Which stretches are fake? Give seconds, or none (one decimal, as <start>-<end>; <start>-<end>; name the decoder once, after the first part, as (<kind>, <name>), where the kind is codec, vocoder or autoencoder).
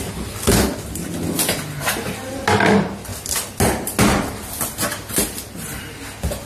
none